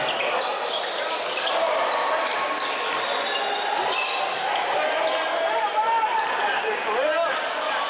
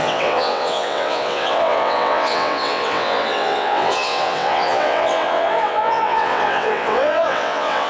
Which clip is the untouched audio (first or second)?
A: first